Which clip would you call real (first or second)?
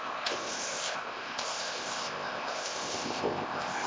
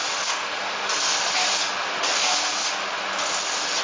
second